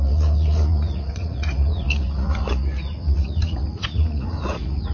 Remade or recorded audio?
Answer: remade